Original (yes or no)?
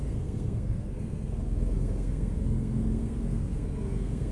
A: no